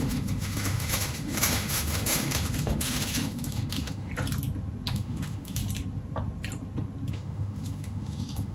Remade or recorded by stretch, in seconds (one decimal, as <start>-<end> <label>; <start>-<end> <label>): 0.0-4.1 remade; 4.1-4.9 recorded; 4.9-5.6 remade; 5.6-7.1 recorded; 7.1-8.5 remade